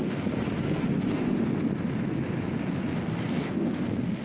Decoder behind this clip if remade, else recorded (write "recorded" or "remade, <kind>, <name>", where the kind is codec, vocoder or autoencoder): recorded